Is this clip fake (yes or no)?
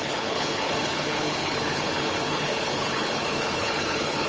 yes